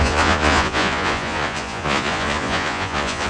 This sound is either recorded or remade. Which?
remade